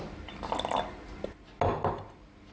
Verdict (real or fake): real